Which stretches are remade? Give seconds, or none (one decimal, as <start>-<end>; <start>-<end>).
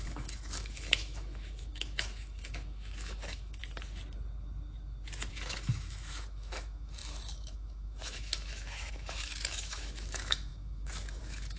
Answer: 0.0-3.6; 5.3-11.6